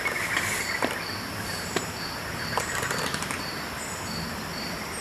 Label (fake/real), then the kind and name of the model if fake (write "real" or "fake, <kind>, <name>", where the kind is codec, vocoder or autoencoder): real